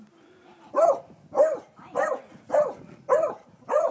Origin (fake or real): real